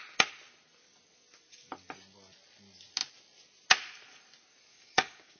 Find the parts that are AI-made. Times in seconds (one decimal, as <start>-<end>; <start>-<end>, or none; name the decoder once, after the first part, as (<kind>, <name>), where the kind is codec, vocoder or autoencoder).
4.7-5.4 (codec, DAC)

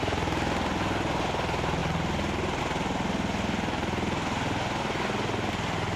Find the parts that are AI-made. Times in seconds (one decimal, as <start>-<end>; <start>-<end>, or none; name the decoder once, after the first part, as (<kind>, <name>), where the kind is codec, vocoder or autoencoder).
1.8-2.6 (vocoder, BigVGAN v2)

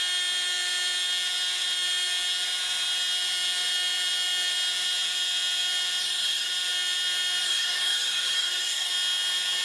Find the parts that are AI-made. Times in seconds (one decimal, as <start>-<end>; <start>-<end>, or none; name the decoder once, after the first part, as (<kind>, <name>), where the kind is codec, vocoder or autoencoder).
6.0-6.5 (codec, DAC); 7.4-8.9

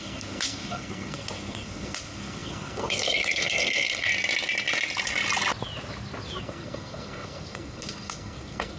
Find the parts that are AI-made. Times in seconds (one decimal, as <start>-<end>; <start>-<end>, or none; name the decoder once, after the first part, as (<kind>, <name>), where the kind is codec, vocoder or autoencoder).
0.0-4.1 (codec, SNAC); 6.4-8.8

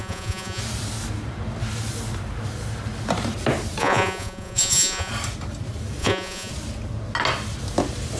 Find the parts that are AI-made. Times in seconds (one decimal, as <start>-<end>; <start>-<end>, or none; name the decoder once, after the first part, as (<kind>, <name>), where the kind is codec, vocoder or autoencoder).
0.0-0.6 (vocoder, Vocos); 3.8-5.1; 6.0-6.5